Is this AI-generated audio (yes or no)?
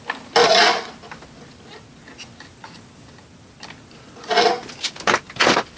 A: no